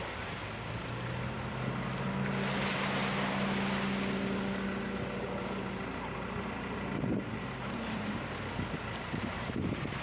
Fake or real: real